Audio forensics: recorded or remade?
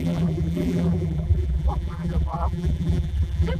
remade